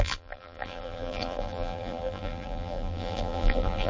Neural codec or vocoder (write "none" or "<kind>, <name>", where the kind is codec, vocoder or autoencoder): vocoder, BigVGAN v2